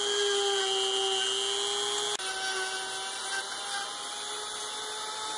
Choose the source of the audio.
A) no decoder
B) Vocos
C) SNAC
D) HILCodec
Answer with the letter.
A